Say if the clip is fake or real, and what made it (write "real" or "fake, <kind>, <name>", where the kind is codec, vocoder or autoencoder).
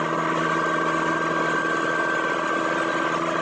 real